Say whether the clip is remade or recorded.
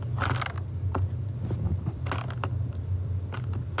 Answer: recorded